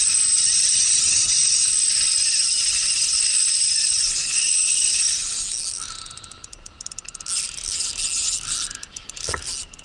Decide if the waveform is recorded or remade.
recorded